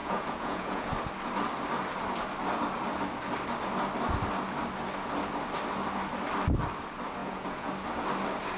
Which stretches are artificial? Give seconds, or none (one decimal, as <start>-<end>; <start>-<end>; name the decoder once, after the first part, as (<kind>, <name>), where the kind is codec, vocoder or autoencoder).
0.0-0.9 (vocoder, Vocos); 7.2-7.7